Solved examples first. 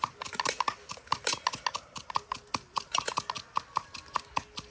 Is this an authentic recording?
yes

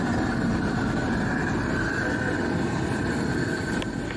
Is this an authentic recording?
no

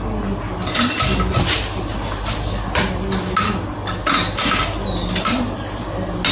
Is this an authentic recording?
yes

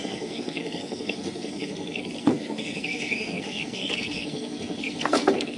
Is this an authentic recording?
no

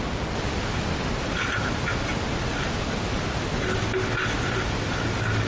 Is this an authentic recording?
yes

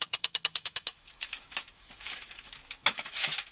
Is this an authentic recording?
no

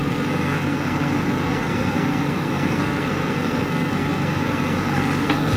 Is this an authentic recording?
no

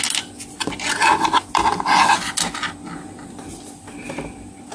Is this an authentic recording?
yes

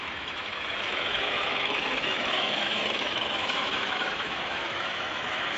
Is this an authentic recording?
no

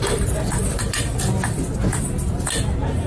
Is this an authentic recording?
yes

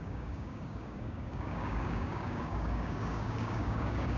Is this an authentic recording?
no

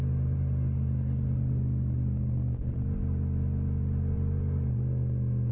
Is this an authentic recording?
yes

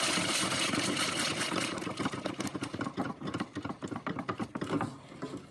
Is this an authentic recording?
yes